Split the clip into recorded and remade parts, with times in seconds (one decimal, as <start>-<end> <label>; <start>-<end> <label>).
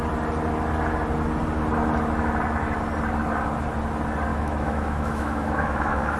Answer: 0.0-4.3 recorded; 4.3-6.2 remade